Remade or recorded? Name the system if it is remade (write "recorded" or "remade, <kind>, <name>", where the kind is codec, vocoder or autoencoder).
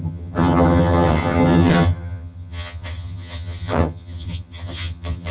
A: remade, vocoder, HiFi-GAN